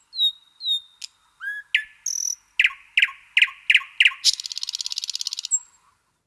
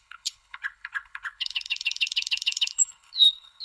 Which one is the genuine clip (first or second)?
first